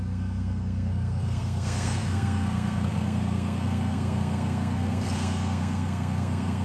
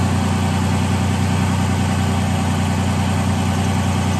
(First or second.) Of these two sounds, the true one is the second